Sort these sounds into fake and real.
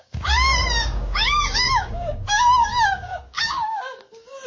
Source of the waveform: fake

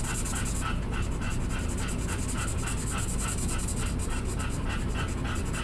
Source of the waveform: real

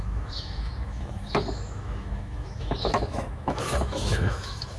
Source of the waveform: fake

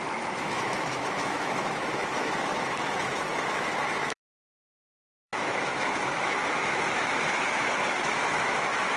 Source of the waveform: fake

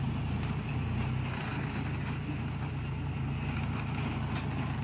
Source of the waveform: real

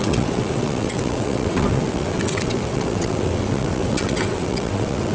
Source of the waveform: fake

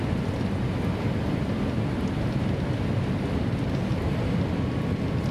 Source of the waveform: real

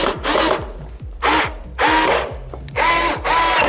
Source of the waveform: real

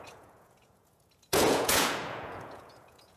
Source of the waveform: fake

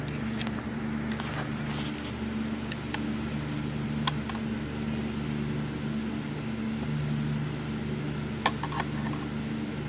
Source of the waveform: real